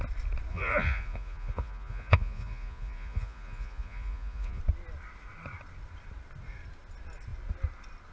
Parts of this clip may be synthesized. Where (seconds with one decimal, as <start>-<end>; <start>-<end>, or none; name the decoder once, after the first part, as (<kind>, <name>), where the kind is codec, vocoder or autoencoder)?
0.5-4.6 (vocoder, Vocos)